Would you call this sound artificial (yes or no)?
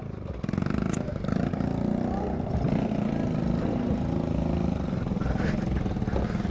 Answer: no